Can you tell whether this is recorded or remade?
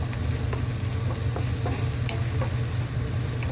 recorded